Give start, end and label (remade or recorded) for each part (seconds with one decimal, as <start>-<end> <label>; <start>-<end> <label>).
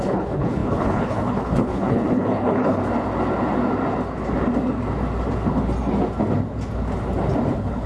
0.0-2.8 remade; 2.8-7.5 recorded; 7.5-7.9 remade